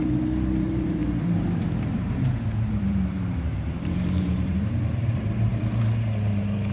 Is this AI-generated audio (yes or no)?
yes